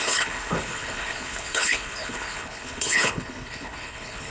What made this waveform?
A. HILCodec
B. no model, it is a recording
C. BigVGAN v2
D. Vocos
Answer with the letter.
A